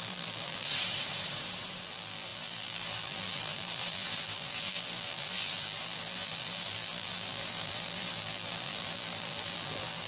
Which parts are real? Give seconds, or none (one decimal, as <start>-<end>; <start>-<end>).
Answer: 0.7-1.8

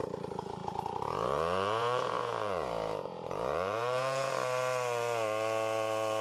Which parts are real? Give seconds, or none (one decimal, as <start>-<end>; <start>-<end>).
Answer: 0.0-0.6; 4.3-6.2

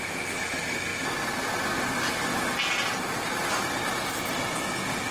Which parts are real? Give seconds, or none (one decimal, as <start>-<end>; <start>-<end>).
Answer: 0.0-5.1